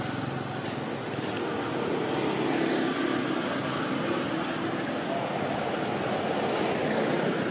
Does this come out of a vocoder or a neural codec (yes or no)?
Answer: no